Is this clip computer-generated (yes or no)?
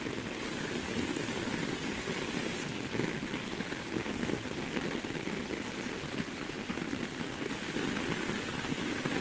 no